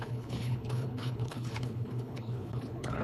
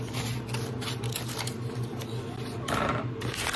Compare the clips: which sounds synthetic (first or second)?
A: first